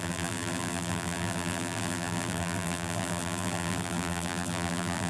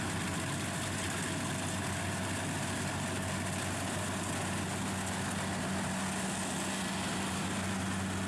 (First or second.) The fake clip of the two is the first